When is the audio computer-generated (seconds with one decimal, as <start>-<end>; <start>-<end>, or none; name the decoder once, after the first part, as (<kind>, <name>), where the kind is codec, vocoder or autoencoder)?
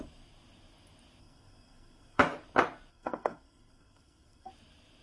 1.2-2.2 (codec, SNAC); 2.9-4.5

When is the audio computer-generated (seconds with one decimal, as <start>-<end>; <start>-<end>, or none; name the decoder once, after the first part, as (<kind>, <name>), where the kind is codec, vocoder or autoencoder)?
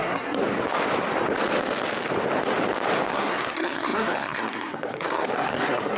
0.0-0.4 (codec, SNAC); 3.1-6.0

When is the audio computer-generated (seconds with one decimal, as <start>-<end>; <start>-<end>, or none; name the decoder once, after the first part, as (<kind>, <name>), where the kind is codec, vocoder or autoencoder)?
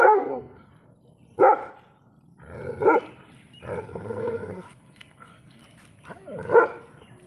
0.0-0.7 (codec, SNAC); 3.8-5.6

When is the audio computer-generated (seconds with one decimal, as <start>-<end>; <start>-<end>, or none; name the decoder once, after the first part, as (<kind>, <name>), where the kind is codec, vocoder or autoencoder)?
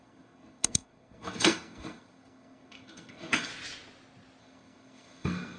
0.0-3.5 (codec, SNAC); 4.4-5.6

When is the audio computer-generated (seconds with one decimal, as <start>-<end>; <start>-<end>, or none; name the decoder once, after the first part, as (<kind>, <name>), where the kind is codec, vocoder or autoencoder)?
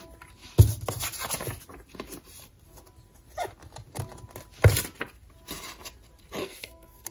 6.4-7.1 (codec, SNAC)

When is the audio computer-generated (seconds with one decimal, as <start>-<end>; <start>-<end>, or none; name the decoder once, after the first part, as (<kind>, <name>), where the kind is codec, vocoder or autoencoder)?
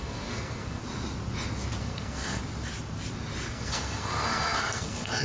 0.0-0.8 (codec, SNAC); 1.8-2.4; 3.5-5.2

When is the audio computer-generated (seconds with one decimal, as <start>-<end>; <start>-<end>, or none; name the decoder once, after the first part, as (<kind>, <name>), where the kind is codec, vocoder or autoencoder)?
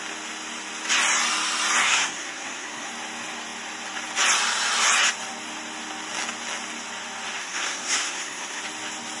1.8-2.9 (codec, SNAC); 7.4-8.6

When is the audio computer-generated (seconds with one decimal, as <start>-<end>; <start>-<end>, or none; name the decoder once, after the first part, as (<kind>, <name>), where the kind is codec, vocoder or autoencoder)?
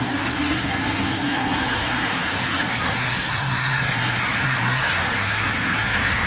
0.0-6.3 (codec, SNAC)